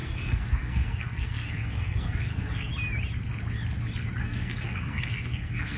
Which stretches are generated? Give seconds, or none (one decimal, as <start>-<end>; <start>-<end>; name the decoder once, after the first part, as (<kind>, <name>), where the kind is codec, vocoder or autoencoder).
0.0-2.7 (codec, SNAC); 4.2-5.8